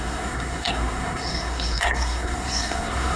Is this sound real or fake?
fake